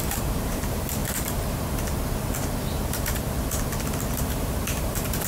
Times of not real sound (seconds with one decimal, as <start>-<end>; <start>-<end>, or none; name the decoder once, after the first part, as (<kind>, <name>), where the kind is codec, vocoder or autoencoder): 0.0-1.0 (vocoder, BigVGAN v2); 4.2-5.3